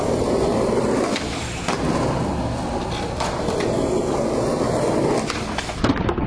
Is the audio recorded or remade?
recorded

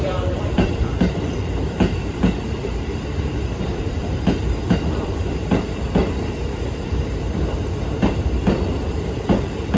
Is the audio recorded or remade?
remade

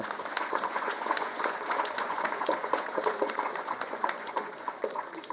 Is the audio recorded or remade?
remade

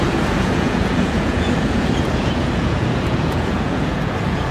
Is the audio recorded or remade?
remade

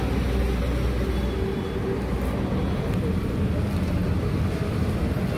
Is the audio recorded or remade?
recorded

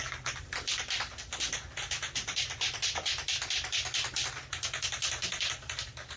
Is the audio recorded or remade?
recorded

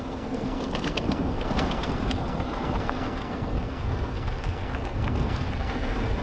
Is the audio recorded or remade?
remade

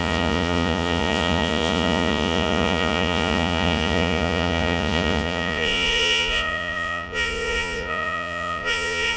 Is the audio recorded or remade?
remade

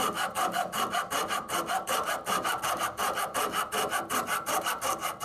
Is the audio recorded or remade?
recorded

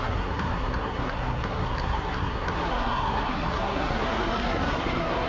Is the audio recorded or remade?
remade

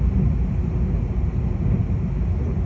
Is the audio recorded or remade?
recorded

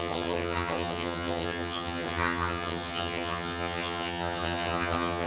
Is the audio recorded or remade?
remade